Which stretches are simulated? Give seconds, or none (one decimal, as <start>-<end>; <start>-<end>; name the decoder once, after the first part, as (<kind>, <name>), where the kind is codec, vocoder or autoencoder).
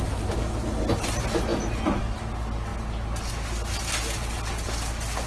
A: none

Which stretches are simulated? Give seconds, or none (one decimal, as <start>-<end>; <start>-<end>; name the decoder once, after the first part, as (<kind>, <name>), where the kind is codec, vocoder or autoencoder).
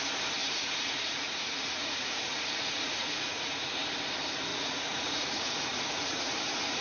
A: 0.4-3.7 (vocoder, Vocos); 4.5-6.8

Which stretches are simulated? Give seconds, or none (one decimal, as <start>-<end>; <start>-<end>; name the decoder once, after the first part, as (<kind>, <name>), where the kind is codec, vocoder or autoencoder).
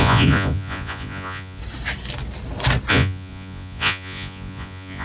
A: 0.0-1.6 (vocoder, Vocos); 2.9-5.0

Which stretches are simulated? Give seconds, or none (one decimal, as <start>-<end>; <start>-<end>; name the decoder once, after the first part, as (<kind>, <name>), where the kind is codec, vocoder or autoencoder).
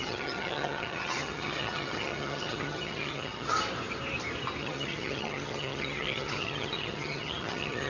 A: 0.0-3.5 (vocoder, HiFi-GAN); 4.6-7.9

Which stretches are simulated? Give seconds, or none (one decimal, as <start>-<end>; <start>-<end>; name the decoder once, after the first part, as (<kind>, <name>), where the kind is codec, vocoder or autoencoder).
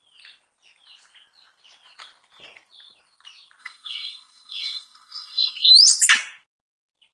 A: 3.6-5.7 (codec, SNAC)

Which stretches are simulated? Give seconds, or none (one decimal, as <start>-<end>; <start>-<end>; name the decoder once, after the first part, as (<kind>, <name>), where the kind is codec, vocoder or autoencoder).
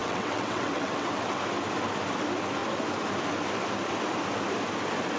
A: 0.0-1.4 (vocoder, WaveNeXt)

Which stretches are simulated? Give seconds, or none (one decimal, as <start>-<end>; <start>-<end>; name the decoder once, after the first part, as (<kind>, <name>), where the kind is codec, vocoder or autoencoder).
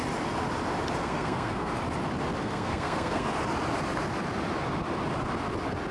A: 1.0-1.7 (codec, SNAC); 2.4-3.3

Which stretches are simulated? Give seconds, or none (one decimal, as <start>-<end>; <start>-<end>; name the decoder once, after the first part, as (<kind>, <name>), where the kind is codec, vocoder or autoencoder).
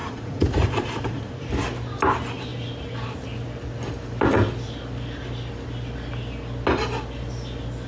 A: 0.0-1.5 (vocoder, Vocos)